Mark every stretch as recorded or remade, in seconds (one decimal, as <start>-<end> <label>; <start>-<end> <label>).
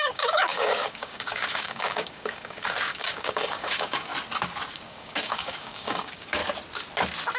0.0-4.1 remade; 4.1-4.7 recorded; 4.7-6.4 remade; 6.4-7.4 recorded